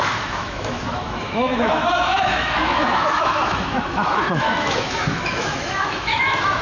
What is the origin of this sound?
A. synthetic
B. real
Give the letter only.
A